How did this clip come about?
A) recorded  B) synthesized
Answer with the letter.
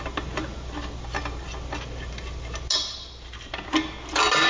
A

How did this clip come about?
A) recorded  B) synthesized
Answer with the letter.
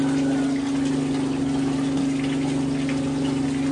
A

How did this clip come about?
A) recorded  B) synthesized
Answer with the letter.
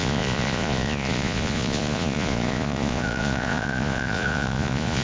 B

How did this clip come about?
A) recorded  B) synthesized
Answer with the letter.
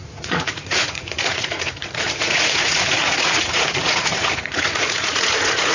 B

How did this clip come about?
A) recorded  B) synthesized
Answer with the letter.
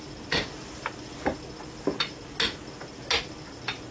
A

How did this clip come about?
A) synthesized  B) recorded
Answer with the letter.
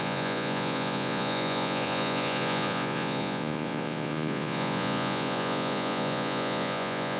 A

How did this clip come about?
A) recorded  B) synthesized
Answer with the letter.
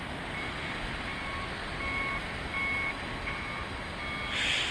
A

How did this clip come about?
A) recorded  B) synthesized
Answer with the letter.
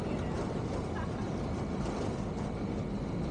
A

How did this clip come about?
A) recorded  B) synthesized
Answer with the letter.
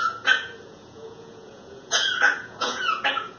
B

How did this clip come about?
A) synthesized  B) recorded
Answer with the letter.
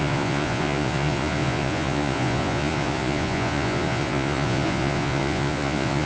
A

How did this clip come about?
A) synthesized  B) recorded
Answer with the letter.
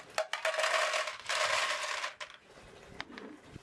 B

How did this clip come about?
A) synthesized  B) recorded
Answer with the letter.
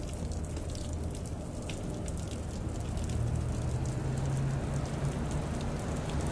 B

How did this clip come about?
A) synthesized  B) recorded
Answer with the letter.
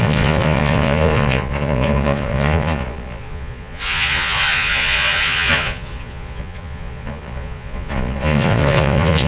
A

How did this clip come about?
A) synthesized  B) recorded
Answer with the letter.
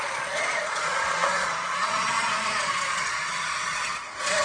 A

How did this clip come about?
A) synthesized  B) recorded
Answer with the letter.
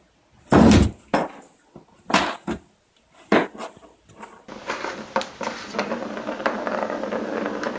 B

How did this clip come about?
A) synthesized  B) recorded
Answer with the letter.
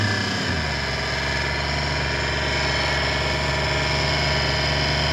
B